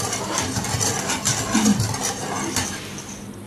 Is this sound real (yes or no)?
yes